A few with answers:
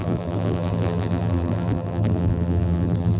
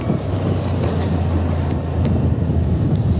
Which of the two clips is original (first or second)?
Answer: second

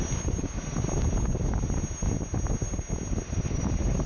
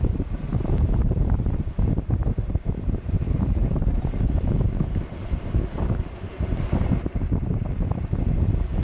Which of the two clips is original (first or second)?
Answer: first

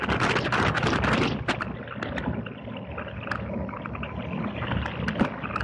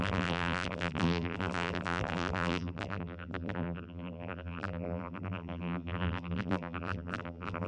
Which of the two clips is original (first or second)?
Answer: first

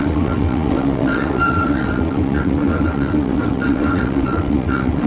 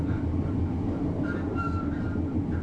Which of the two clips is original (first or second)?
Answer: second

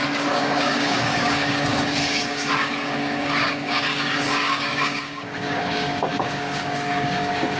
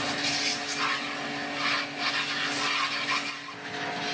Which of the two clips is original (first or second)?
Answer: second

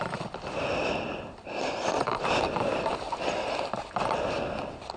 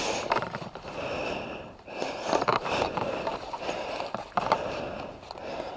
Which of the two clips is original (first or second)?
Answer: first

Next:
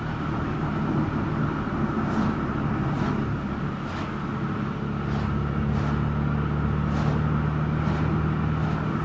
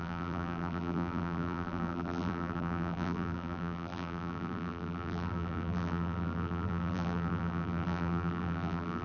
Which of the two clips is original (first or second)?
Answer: first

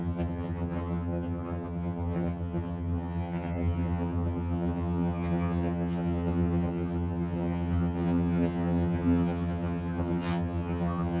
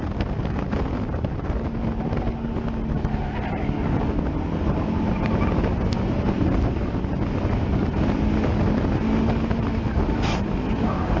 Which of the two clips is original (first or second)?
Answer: second